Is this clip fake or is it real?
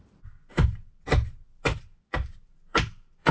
real